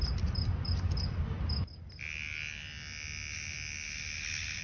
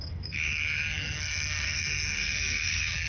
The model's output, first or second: second